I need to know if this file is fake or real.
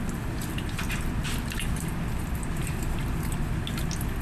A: real